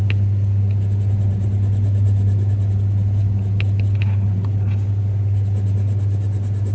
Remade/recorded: recorded